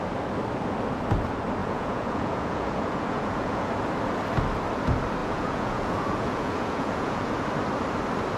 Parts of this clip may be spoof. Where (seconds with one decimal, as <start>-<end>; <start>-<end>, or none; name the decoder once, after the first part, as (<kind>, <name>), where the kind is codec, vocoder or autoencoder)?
1.6-3.7 (vocoder, Vocos); 5.2-7.3